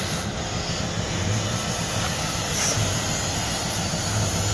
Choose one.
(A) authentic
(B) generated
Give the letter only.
A